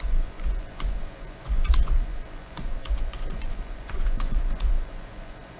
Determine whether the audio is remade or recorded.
remade